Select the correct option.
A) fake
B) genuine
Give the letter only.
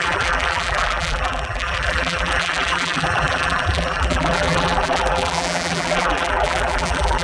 A